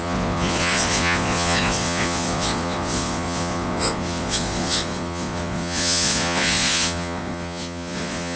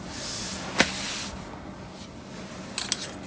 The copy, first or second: first